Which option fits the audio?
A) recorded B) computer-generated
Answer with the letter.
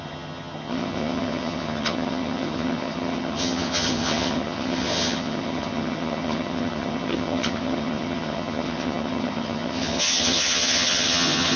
B